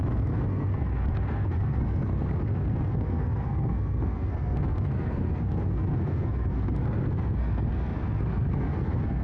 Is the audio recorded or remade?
remade